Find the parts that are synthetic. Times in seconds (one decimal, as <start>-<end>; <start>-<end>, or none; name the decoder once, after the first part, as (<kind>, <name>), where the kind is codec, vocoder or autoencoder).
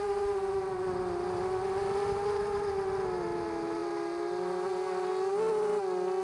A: none